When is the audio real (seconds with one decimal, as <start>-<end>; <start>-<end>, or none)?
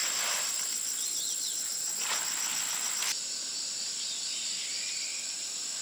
0.0-1.7; 2.8-5.8